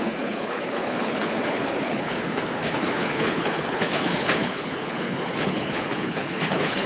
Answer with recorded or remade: remade